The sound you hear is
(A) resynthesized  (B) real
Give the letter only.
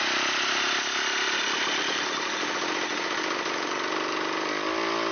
B